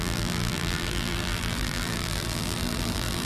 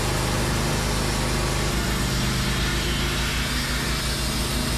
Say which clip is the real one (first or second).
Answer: second